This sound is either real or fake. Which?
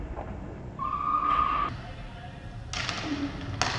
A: real